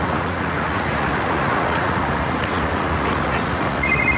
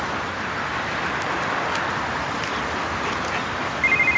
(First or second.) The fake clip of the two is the first